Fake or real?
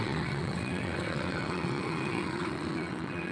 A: fake